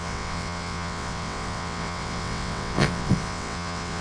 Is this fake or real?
fake